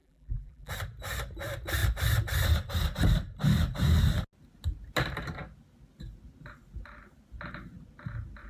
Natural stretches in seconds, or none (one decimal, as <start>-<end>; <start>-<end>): 0.7-8.5